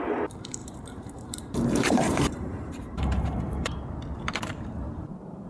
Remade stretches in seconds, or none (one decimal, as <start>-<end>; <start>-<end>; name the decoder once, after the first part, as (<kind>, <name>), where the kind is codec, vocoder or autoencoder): 0.6-3.9 (vocoder, BigVGAN v2)

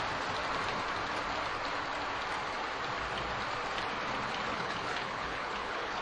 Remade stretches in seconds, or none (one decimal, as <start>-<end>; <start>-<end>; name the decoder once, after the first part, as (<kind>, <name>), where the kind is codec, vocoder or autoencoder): 4.5-6.0 (codec, HILCodec)

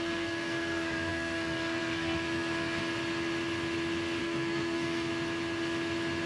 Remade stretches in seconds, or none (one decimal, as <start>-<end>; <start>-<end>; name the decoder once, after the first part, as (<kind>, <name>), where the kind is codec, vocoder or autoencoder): 0.0-2.8 (codec, SNAC); 4.2-5.1

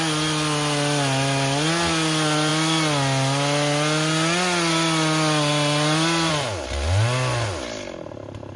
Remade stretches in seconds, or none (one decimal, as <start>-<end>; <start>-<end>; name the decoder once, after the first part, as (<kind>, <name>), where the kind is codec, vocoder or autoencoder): none

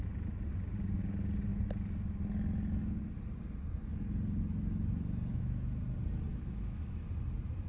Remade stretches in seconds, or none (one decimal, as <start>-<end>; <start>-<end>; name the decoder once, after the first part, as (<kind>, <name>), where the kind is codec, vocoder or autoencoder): 5.3-5.8 (autoencoder, DAC-VAE); 6.3-7.0

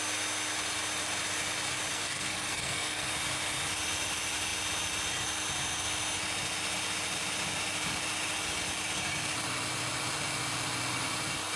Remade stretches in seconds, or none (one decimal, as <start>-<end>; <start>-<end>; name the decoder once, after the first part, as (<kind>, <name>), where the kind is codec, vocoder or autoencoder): 1.9-3.1 (codec, SNAC)

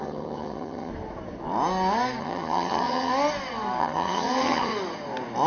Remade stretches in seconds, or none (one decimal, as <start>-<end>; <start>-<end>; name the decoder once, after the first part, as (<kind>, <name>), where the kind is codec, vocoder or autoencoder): 0.0-0.9 (vocoder, HiFi-GAN); 2.2-3.1; 3.8-4.7

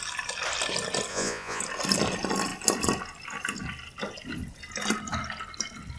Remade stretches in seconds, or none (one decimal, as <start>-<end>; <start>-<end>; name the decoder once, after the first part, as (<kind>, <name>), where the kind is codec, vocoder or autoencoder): 1.1-1.6 (vocoder, Vocos)